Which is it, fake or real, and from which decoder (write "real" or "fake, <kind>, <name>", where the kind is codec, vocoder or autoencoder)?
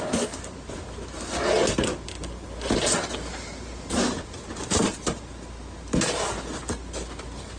real